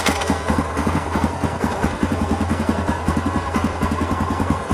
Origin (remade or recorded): remade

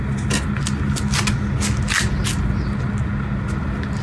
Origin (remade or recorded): recorded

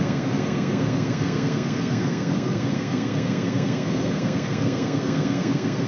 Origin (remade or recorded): remade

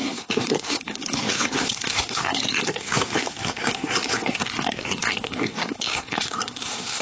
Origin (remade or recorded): remade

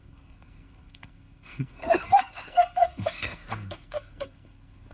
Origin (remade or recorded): remade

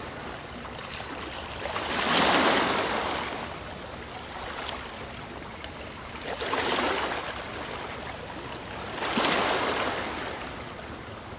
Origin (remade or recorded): recorded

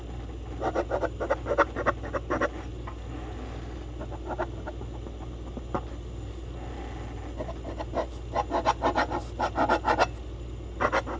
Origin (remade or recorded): recorded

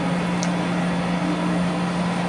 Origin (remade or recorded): recorded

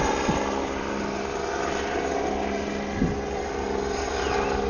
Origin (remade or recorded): recorded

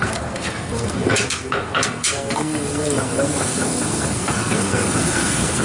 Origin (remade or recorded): remade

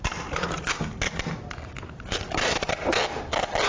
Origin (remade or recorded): recorded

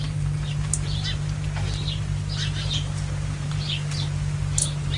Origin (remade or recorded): recorded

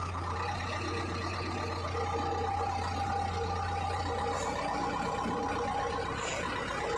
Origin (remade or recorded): recorded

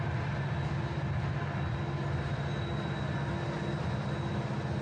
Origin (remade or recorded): recorded